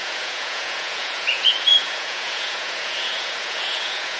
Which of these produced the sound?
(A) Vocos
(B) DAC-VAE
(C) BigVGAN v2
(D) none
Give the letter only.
A